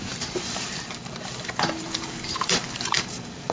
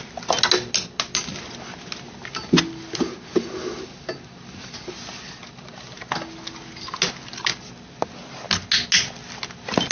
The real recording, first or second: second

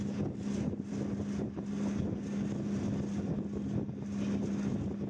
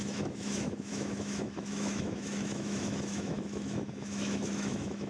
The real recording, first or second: first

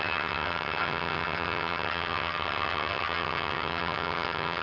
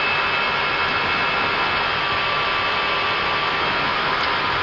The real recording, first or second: second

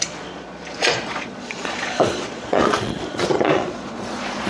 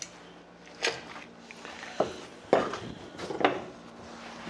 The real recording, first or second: second